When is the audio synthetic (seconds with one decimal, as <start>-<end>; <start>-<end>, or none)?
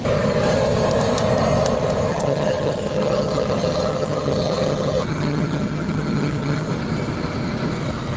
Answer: 2.1-6.7